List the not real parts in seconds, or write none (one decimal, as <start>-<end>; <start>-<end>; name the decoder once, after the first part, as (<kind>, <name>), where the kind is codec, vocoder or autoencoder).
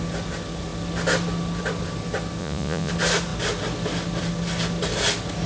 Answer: 2.4-2.9 (vocoder, Vocos)